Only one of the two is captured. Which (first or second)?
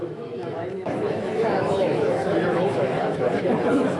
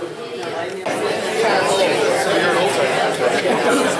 second